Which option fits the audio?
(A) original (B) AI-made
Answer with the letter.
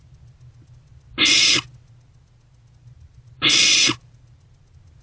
A